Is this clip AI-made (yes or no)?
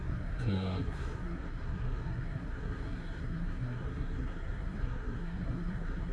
yes